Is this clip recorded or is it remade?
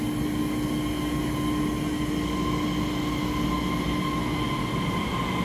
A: recorded